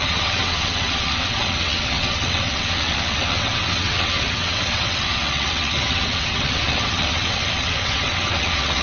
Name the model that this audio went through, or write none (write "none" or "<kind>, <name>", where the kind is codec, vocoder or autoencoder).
vocoder, WaveNeXt